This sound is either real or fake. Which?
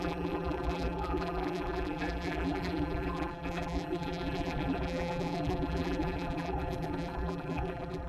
fake